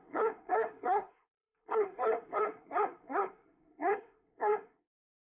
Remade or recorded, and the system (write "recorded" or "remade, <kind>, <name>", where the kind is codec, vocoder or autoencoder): remade, codec, SNAC